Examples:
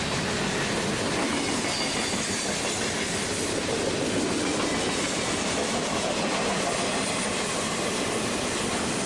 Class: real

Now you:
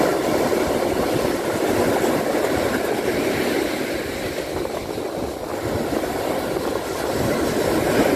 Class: real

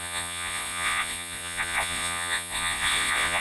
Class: fake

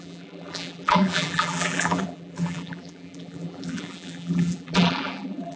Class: fake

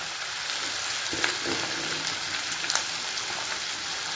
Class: real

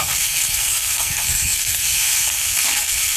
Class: fake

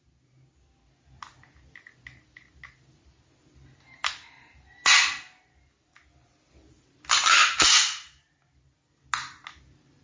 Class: real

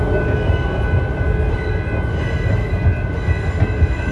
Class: real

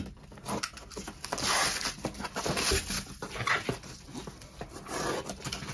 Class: real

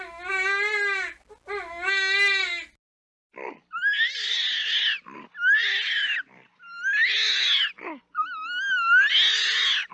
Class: real